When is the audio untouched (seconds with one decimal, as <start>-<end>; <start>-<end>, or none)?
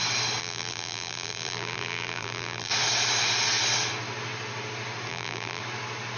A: 0.0-0.4; 2.7-5.1; 5.6-6.2